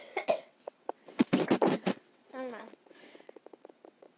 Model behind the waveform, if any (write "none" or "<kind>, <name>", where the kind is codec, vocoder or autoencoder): vocoder, WaveNeXt